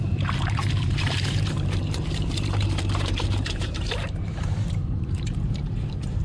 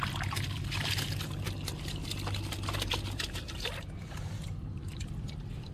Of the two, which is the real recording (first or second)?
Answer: second